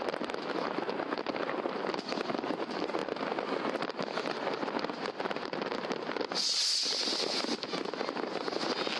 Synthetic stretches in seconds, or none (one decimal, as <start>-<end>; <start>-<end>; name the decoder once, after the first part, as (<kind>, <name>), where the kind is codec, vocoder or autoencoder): none